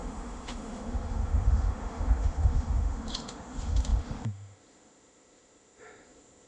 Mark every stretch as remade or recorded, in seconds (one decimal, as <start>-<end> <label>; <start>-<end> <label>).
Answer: 0.0-6.5 remade